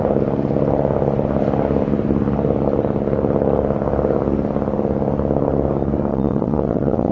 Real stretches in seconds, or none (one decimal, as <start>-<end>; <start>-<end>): 0.0-6.1